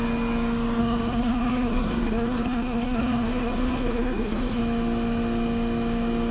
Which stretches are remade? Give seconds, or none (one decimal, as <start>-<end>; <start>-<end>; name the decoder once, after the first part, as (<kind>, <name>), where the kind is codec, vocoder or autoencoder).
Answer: 0.8-4.6 (codec, SNAC)